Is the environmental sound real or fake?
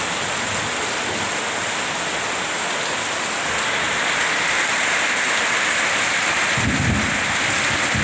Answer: real